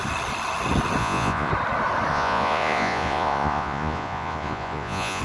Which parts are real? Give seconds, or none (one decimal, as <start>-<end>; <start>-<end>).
0.0-1.0; 1.5-2.1